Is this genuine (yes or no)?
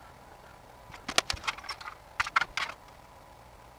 yes